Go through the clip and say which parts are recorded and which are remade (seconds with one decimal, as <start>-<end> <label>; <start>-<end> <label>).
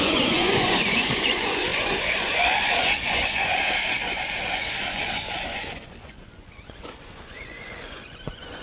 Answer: 0.0-8.6 remade